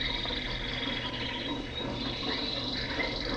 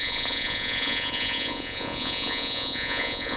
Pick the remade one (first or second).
second